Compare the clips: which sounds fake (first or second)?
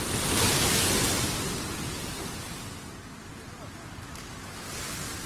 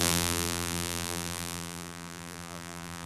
second